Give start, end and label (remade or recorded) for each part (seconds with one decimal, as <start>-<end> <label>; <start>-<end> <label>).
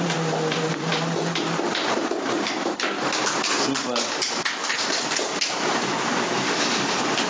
0.0-7.3 recorded